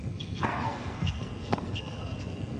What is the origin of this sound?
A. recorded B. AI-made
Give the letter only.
B